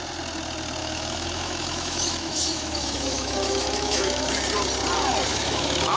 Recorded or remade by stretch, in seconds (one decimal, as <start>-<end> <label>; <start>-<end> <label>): 0.0-0.8 recorded; 0.8-4.4 remade; 4.4-5.3 recorded; 5.3-6.0 remade